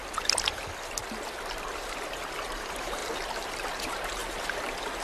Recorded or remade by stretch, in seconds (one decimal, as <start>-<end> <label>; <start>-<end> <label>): 0.0-1.9 recorded; 1.9-3.0 remade; 3.0-3.8 recorded; 3.8-4.2 remade; 4.2-5.0 recorded